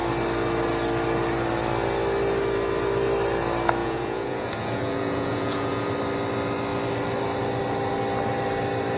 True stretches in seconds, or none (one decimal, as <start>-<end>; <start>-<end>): 0.0-3.8; 5.9-9.0

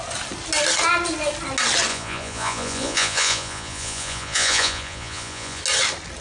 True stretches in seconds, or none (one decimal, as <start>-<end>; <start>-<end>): 0.0-1.9; 5.6-6.2

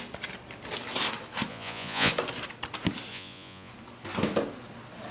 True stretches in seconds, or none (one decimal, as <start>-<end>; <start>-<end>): 0.0-1.5; 2.1-3.1; 3.7-5.1

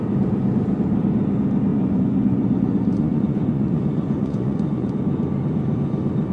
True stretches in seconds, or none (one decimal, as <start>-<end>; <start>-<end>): 0.0-1.7; 4.9-6.3

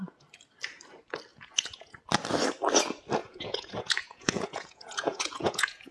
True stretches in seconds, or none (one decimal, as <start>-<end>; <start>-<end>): 0.0-1.3; 2.0-3.2

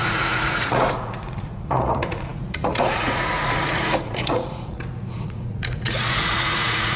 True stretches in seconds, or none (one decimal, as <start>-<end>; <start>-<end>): none

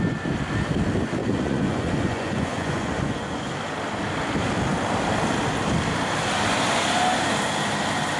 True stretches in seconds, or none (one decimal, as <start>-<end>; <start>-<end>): 0.0-1.2; 3.5-8.2

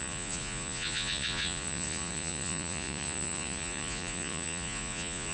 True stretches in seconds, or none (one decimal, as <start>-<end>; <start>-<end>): none